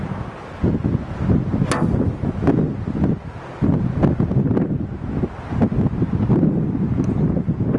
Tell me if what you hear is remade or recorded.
recorded